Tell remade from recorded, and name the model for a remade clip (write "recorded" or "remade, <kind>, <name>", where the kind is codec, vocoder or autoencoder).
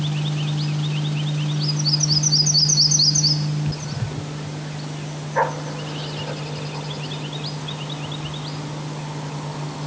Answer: recorded